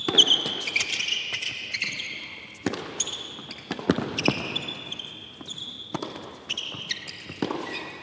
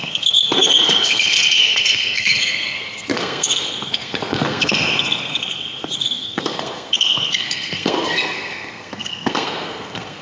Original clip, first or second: first